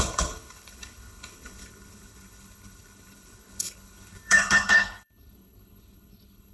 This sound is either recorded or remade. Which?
remade